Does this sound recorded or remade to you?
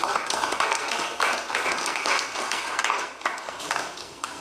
remade